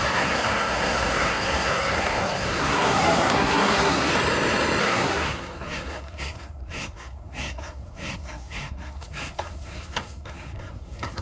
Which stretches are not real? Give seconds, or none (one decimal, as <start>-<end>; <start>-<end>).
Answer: 0.0-4.1; 4.8-11.2